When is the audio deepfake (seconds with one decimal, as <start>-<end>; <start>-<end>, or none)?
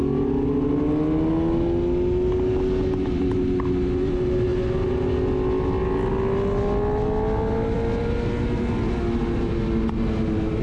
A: none